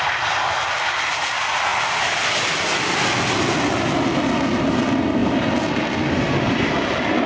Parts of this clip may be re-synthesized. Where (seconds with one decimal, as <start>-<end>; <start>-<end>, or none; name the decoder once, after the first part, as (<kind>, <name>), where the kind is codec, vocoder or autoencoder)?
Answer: none